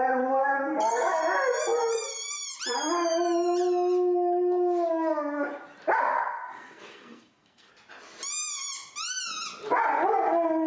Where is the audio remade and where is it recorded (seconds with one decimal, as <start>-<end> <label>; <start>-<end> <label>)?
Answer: 0.0-0.4 recorded; 0.4-1.2 remade; 1.2-6.1 recorded; 6.1-7.7 remade; 7.7-10.7 recorded